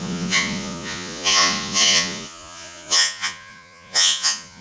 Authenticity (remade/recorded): remade